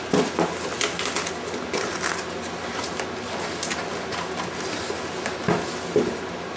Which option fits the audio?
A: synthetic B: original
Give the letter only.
B